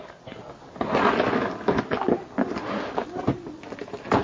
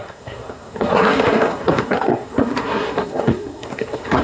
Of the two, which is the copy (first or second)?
second